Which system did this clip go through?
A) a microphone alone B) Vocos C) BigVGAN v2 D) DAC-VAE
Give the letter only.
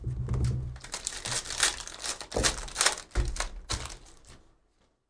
A